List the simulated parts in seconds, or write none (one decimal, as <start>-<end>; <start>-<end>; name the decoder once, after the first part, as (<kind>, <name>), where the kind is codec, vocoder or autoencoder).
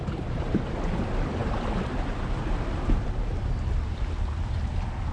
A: none